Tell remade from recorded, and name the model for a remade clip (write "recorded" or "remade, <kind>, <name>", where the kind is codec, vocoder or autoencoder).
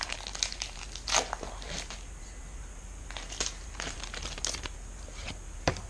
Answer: recorded